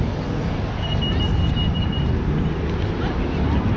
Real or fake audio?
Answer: real